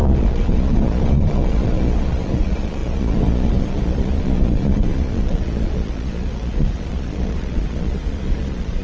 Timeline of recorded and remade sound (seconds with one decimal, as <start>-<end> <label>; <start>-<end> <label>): 0.0-8.8 remade